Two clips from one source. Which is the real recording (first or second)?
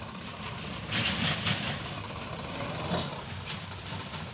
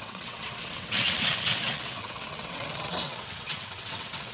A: first